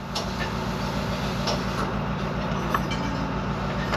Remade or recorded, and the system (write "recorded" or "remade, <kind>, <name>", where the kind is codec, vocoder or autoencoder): recorded